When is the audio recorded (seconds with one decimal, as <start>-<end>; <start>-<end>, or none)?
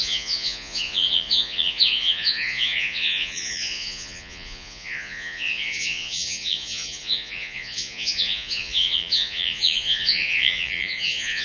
none